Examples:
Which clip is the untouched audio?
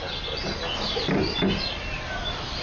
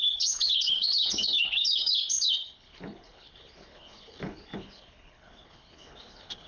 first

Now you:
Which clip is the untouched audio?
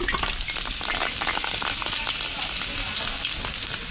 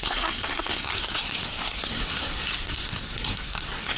first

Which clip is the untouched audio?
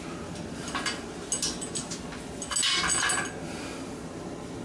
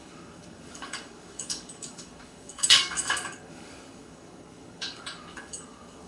first